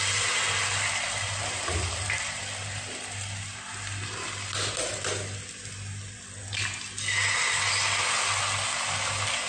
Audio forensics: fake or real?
real